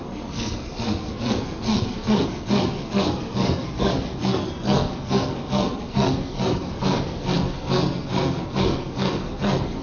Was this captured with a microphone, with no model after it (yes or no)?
no